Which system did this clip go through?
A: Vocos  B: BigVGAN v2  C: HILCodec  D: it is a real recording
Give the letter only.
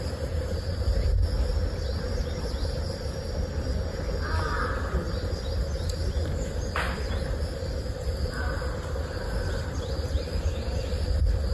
D